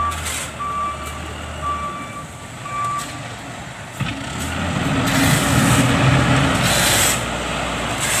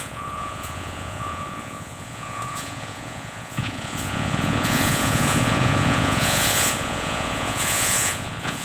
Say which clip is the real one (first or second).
first